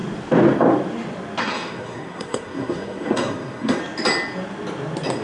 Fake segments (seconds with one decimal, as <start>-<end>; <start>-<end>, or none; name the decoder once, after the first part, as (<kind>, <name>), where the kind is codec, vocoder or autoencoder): 1.4-3.8 (codec, SNAC)